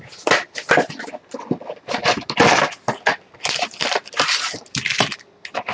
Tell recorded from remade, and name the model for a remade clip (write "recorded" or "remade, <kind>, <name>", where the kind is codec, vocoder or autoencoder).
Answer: recorded